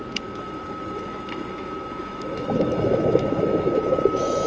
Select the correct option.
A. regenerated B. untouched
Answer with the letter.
A